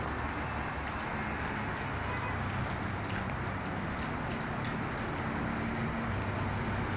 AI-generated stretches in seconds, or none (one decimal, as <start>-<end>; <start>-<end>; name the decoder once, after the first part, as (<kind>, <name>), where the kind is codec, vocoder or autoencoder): none